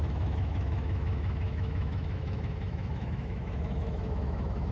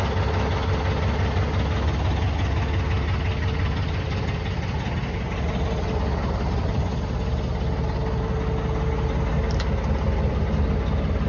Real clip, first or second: second